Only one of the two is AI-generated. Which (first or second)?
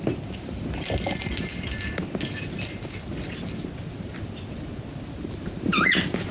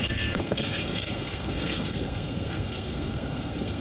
second